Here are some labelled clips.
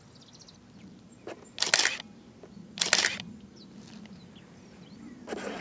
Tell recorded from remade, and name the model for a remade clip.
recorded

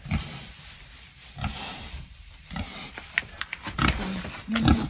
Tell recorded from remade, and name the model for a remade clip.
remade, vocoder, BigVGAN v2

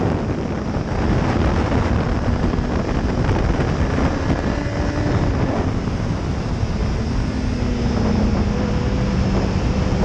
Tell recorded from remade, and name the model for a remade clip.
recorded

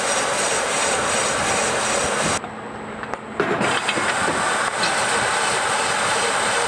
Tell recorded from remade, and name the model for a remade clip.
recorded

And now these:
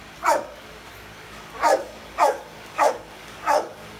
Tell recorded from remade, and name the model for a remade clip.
remade, codec, DAC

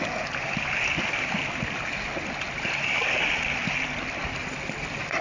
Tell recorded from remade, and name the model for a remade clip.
recorded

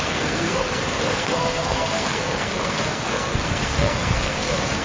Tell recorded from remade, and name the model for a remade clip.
remade, codec, SNAC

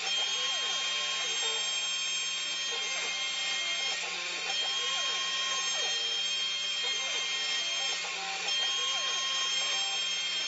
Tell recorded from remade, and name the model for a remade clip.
recorded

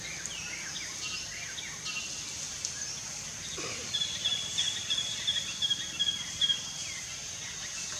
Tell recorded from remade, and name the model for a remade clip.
recorded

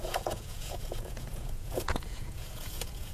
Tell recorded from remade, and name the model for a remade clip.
remade, vocoder, Vocos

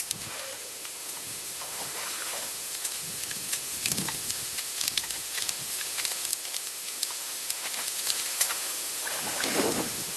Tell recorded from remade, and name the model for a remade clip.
remade, autoencoder, DAC-VAE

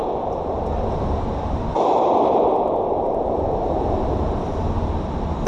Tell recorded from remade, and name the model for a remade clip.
remade, vocoder, BigVGAN v2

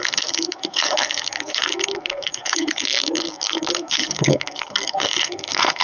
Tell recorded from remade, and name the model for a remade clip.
remade, codec, SNAC